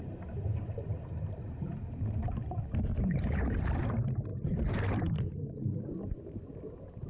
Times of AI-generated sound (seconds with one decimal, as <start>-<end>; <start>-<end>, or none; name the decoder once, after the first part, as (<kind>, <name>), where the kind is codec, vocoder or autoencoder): none